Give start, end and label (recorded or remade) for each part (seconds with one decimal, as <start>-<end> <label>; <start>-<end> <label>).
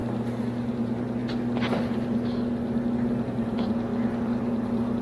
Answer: 0.0-0.7 recorded; 0.7-1.2 remade; 1.2-3.2 recorded; 3.2-3.9 remade; 3.9-5.0 recorded